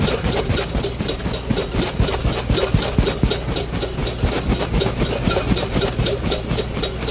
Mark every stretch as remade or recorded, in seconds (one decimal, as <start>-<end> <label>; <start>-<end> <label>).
0.0-7.1 recorded